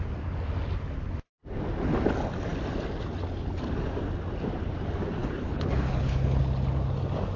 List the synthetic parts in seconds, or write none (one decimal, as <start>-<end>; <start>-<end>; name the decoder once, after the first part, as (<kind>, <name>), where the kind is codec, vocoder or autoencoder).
5.2-6.4 (codec, HILCodec)